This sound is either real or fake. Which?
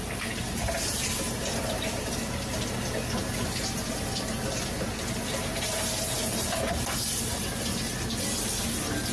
real